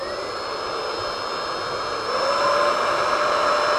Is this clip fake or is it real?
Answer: real